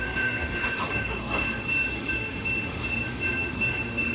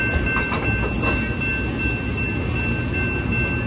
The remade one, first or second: first